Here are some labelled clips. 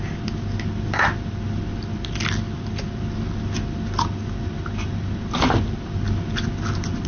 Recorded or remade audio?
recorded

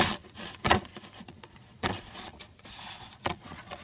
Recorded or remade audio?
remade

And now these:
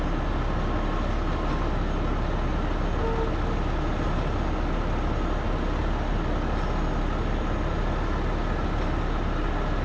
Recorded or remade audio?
recorded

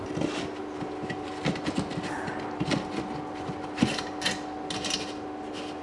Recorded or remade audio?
recorded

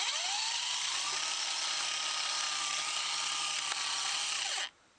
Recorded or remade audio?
recorded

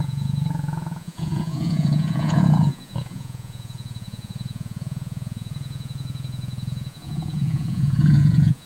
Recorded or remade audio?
remade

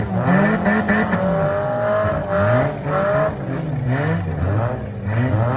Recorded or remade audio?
recorded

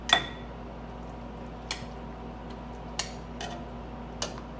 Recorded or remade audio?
recorded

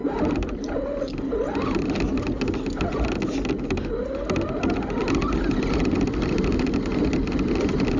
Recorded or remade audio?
recorded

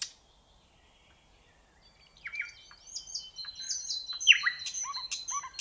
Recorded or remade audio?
recorded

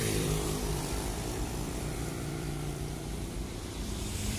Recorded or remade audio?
remade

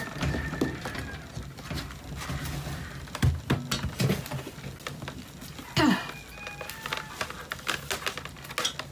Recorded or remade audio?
recorded